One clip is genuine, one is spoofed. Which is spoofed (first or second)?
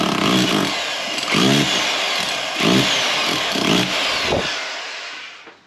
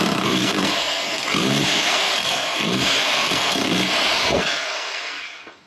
second